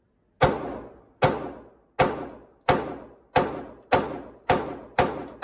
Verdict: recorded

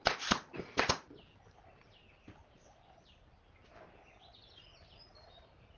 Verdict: recorded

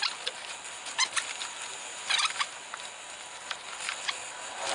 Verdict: recorded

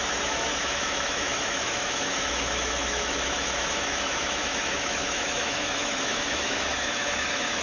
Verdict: remade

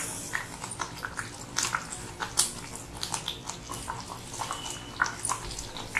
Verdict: recorded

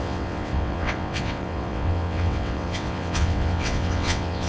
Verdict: remade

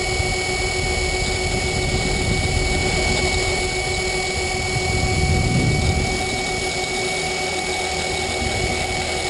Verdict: recorded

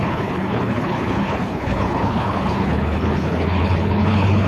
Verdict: remade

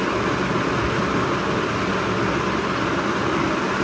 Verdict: recorded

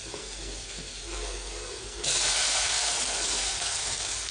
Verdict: remade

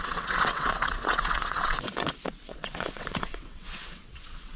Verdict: remade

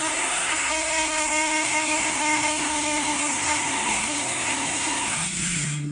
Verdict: remade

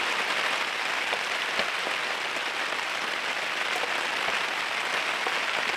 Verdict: recorded